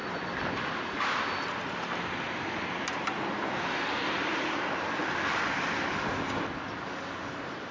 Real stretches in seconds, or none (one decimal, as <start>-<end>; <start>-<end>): 0.0-7.7